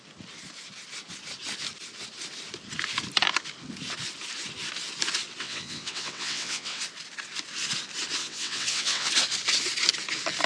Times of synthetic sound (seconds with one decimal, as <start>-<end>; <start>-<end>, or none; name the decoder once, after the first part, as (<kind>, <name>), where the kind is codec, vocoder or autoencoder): 5.4-6.8 (vocoder, WaveNeXt); 8.2-9.1